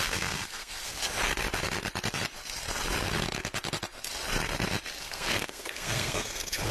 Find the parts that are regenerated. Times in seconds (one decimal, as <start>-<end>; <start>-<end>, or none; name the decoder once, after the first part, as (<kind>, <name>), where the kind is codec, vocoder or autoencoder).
0.0-1.0 (codec, SNAC); 5.0-6.7